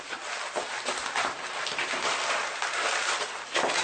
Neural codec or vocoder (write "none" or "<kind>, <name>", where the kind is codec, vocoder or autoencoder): none